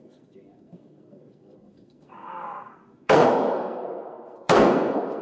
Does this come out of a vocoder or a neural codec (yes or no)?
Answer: yes